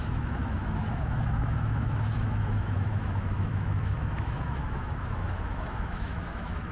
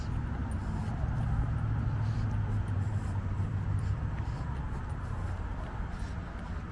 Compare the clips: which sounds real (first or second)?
second